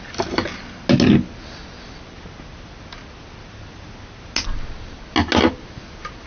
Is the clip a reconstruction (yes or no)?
no